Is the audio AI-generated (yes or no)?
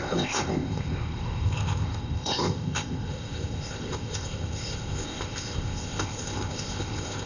yes